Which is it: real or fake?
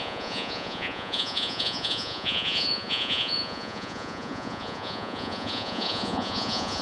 fake